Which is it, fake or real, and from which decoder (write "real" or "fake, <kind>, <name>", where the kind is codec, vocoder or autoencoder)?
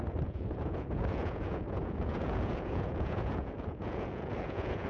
fake, vocoder, Vocos